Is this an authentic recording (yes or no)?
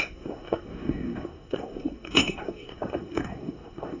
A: no